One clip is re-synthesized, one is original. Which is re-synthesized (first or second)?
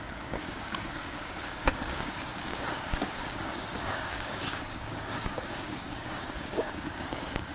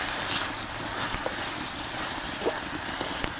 first